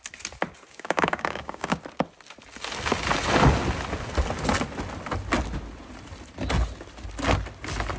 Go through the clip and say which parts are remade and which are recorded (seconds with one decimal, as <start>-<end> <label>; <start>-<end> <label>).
0.0-0.7 recorded; 0.7-1.8 remade; 1.8-8.0 recorded